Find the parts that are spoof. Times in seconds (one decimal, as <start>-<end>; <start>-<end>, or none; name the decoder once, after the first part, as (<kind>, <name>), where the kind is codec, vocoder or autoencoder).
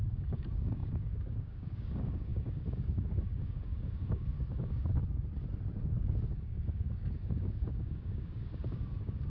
0.0-5.0 (codec, DAC); 5.9-9.3